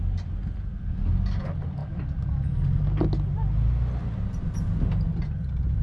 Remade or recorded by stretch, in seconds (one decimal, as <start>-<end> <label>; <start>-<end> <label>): 0.0-5.8 recorded